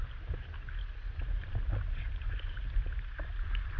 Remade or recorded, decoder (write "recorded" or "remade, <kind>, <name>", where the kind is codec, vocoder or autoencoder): recorded